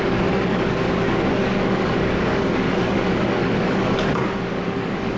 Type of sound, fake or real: fake